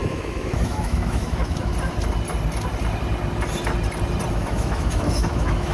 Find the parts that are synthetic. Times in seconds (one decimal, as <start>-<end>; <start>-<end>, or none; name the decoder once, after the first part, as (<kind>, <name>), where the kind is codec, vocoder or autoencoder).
0.0-1.7 (autoencoder, DAC-VAE); 4.3-5.7